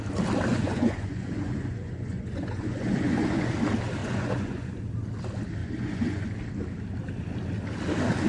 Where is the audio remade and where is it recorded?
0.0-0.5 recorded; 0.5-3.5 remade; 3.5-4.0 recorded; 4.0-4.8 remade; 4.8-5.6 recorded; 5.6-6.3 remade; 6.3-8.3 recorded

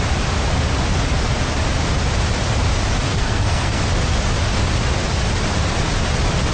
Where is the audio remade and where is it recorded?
0.0-3.1 recorded; 3.1-3.8 remade; 3.8-6.5 recorded

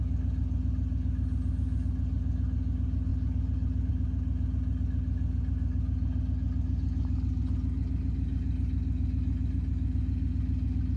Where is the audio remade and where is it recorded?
0.0-11.0 recorded

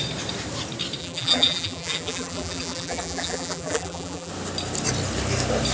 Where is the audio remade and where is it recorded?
0.0-1.0 recorded; 1.0-4.3 remade; 4.3-5.7 recorded

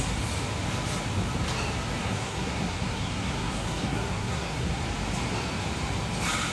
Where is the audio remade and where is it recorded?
0.0-2.0 recorded; 2.0-4.8 remade; 4.8-6.5 recorded

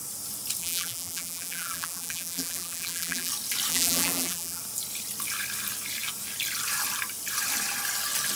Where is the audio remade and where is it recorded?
0.0-0.6 recorded; 0.6-3.3 remade; 3.3-3.7 recorded; 3.7-4.6 remade; 4.6-8.4 recorded

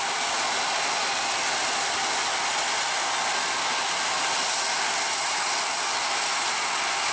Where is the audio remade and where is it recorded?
0.0-7.1 recorded

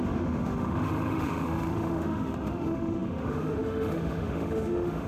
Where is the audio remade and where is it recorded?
0.0-5.1 remade